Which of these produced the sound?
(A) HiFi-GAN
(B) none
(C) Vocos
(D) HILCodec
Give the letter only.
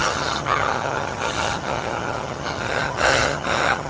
A